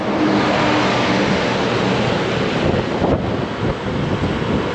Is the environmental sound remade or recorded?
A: recorded